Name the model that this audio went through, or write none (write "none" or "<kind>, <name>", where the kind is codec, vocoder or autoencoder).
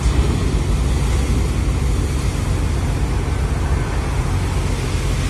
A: none